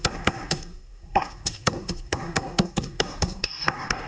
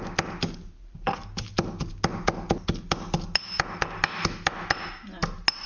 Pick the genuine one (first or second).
second